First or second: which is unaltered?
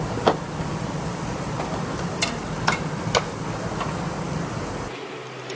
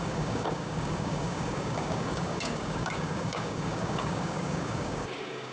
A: first